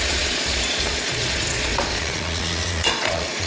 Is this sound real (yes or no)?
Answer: no